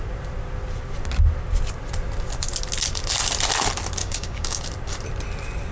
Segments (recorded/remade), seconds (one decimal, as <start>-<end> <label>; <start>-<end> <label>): 0.0-4.0 recorded; 4.0-4.6 remade; 4.6-5.7 recorded